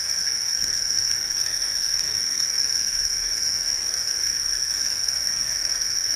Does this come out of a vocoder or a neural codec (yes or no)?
yes